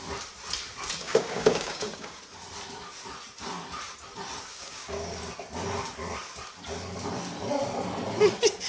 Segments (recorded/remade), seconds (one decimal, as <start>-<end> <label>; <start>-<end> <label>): 0.0-1.0 recorded; 1.0-2.2 remade; 2.2-4.5 recorded; 4.5-5.2 remade; 5.2-8.7 recorded

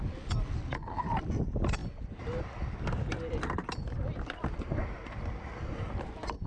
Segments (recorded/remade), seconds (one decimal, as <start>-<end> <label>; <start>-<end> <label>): 0.0-6.5 recorded

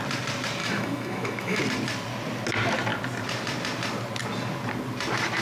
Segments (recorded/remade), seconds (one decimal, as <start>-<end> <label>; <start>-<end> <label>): 0.0-0.6 recorded; 0.6-1.6 remade; 1.6-5.4 recorded

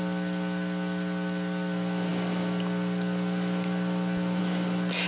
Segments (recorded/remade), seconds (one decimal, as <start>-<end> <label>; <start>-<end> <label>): 0.0-5.1 recorded

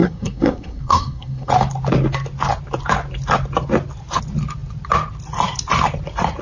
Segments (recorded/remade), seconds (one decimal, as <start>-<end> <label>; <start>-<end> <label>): 0.0-1.5 remade; 1.5-6.4 recorded

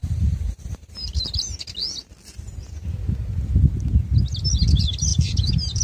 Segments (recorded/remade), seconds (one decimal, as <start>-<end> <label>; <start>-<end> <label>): 0.0-1.2 remade; 1.2-5.1 recorded; 5.1-5.8 remade